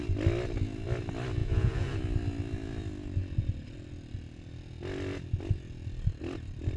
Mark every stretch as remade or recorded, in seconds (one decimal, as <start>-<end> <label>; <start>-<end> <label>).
0.0-1.4 recorded; 1.4-2.0 remade; 2.0-6.8 recorded